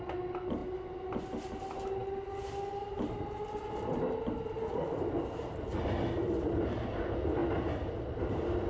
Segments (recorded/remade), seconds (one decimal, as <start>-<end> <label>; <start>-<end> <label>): 0.0-8.7 recorded

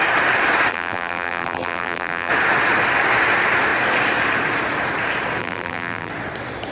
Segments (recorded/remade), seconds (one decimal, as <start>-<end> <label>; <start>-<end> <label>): 0.0-0.7 recorded; 0.7-2.3 remade; 2.3-5.4 recorded; 5.4-6.1 remade; 6.1-6.7 recorded

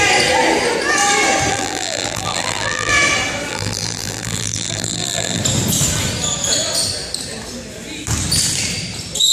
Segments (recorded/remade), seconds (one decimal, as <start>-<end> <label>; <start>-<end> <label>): 0.0-1.5 recorded; 1.5-2.9 remade; 2.9-3.5 recorded; 3.5-5.4 remade; 5.4-9.3 recorded

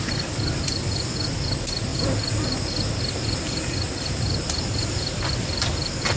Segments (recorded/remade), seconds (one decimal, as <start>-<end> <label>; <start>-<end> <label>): 0.0-1.9 recorded; 1.9-5.2 remade; 5.2-6.2 recorded